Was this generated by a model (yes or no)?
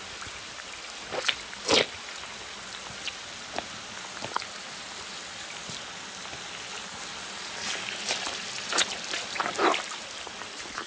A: no